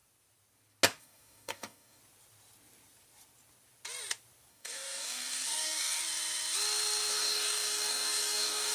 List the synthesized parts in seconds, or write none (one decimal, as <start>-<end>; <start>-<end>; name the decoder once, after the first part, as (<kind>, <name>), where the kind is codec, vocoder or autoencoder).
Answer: 1.0-2.0 (codec, DAC); 4.5-6.0; 7.1-8.7